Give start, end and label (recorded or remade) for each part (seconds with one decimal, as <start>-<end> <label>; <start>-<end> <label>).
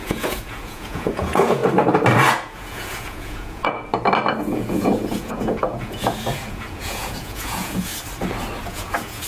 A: 0.0-1.6 remade; 1.6-2.3 recorded; 2.3-3.9 remade; 3.9-4.4 recorded; 4.4-7.9 remade; 7.9-8.6 recorded; 8.6-9.3 remade